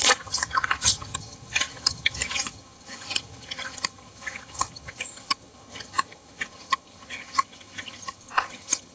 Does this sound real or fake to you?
fake